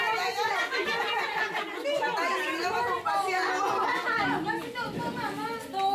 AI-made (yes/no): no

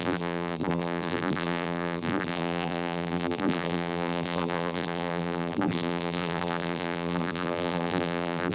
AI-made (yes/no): yes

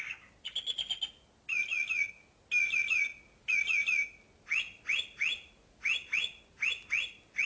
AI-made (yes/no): no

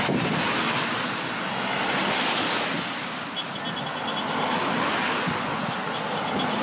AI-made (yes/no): no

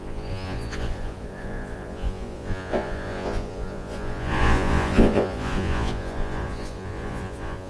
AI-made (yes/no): yes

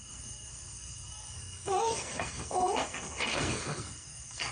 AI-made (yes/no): yes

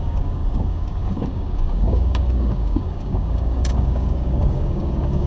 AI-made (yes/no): yes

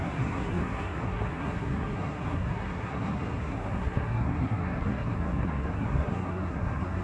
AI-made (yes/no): yes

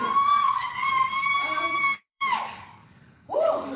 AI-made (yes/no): yes